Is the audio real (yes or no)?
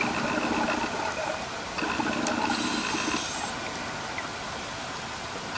yes